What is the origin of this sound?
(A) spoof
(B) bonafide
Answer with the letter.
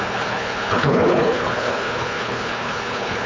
A